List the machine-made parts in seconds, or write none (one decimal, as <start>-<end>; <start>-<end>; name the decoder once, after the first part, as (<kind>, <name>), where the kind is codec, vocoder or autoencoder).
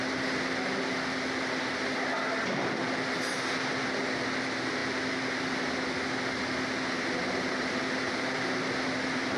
none